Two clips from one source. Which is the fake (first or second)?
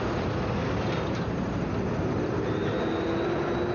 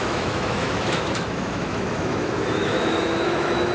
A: second